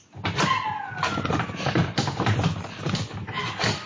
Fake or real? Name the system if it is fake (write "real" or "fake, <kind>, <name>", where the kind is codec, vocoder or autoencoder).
real